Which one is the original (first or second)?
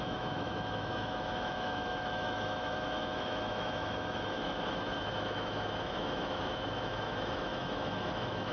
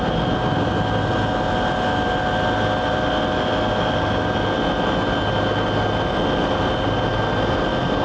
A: second